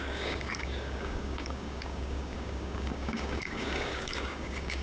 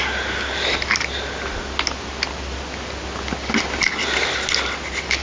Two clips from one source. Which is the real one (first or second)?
second